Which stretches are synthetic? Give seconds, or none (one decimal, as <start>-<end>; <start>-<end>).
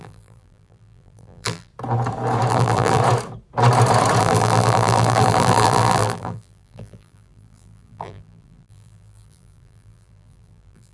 0.0-1.7; 2.5-3.0; 4.2-10.9